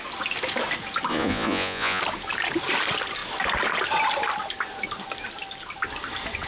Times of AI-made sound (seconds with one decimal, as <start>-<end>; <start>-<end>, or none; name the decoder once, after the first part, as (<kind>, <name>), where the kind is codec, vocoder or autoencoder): 1.1-2.0 (vocoder, Vocos)